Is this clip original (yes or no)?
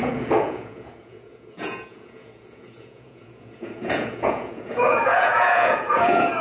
no